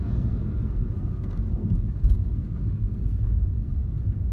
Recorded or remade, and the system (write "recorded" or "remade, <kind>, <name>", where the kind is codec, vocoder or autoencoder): remade, codec, SNAC